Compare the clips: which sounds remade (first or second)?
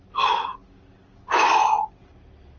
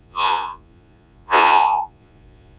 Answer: second